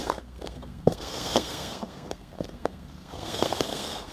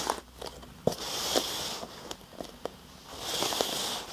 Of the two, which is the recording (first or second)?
second